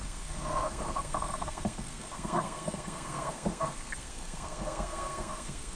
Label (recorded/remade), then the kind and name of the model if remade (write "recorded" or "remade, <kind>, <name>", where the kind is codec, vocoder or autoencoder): remade, codec, SNAC